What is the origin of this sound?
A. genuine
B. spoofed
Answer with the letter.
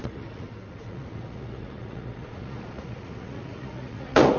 B